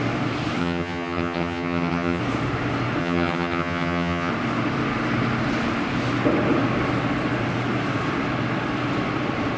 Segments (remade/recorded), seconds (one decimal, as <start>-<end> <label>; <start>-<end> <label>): 0.0-0.6 recorded; 0.6-2.2 remade; 2.2-3.0 recorded; 3.0-4.3 remade; 4.3-9.6 recorded